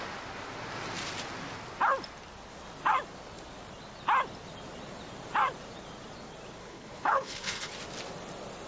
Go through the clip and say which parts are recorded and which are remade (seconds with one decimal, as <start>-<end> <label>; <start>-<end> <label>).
0.0-6.6 recorded; 6.6-7.7 remade; 7.7-8.7 recorded